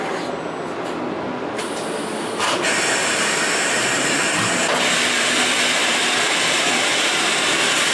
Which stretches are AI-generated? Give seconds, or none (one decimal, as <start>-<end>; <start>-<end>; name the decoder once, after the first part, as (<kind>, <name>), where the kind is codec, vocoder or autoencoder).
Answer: 3.0-4.2 (vocoder, BigVGAN v2); 5.8-6.9